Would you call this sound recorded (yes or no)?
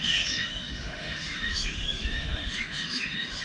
no